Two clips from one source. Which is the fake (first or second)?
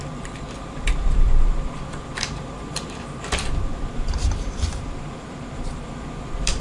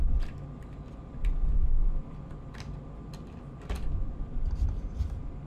first